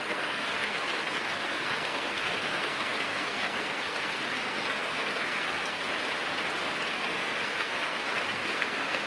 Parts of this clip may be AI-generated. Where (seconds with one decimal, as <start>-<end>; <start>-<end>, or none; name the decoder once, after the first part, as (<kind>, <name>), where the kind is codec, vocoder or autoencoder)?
0.0-5.9 (codec, SNAC); 6.6-9.1